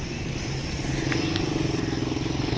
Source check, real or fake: real